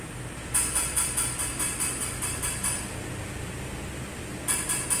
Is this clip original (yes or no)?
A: yes